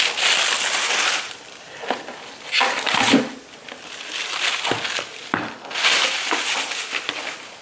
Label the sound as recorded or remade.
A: recorded